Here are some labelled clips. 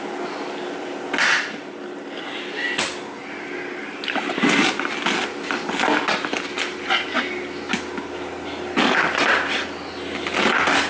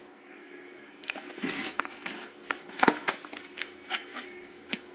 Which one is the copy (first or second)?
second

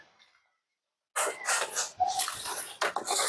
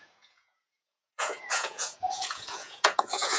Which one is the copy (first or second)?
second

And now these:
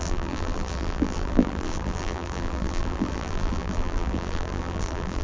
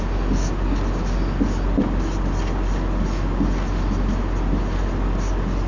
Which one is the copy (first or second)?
first